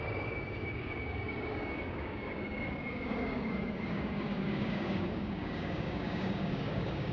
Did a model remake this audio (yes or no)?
yes